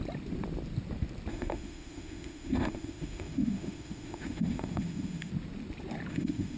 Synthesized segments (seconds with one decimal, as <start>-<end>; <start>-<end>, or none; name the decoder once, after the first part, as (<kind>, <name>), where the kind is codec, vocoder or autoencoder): 1.3-5.3 (autoencoder, DAC-VAE); 6.1-6.6